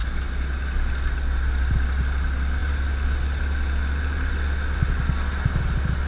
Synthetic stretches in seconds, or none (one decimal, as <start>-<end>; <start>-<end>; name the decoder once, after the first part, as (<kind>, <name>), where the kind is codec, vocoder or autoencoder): none